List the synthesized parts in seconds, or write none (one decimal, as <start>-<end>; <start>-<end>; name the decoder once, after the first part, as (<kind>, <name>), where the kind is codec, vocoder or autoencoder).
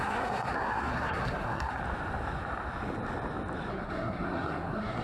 0.0-1.8 (codec, SNAC); 3.7-5.0